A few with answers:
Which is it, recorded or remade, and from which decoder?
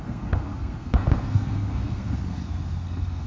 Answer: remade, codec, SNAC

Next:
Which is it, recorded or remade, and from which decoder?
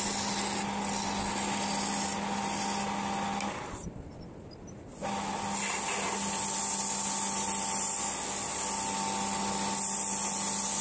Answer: recorded